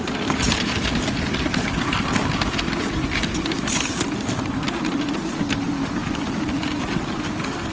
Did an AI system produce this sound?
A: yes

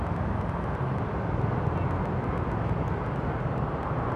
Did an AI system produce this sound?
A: no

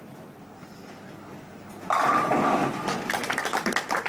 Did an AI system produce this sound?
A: no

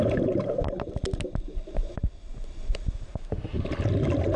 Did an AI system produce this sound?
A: yes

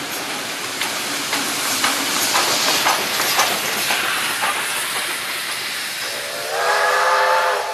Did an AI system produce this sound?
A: no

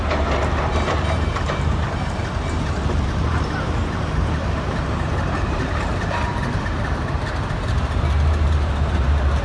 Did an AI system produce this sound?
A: yes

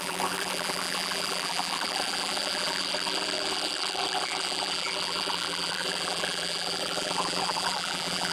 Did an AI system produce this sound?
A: yes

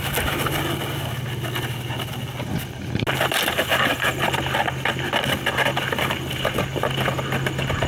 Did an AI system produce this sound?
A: no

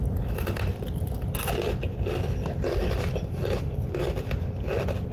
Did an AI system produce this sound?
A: no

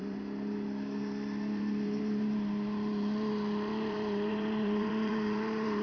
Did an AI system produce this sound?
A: yes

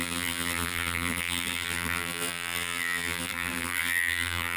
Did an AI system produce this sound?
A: yes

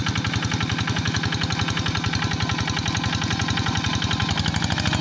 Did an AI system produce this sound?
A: no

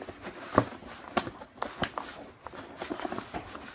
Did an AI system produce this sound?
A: no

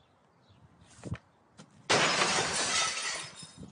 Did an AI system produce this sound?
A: no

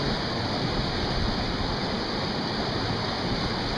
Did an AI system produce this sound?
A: no